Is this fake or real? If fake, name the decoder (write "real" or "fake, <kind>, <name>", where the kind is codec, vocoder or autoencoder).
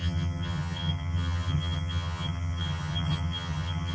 fake, vocoder, HiFi-GAN